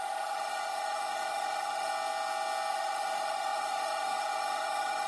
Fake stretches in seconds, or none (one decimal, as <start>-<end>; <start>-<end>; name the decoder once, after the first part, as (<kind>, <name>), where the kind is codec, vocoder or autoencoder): 0.0-1.9 (autoencoder, DAC-VAE); 2.7-5.1